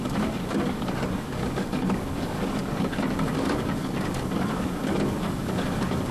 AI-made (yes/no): yes